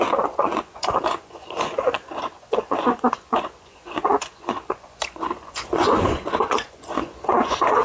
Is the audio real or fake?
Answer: fake